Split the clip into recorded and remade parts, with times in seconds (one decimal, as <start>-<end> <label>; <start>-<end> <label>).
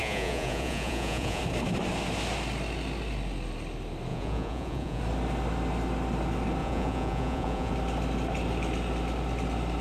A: 0.0-1.4 remade; 1.4-4.1 recorded; 4.1-5.0 remade; 5.0-6.6 recorded; 6.6-7.7 remade; 7.7-9.8 recorded